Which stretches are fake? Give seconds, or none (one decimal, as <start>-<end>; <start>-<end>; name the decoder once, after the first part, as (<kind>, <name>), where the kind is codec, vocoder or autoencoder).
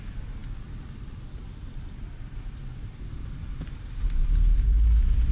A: none